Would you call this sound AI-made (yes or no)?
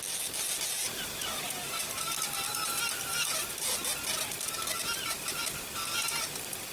no